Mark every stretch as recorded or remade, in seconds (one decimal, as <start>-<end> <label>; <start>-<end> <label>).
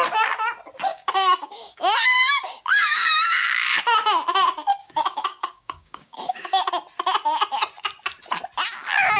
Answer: 0.0-0.9 recorded; 0.9-3.8 remade; 3.8-4.8 recorded; 4.8-6.7 remade; 6.7-9.2 recorded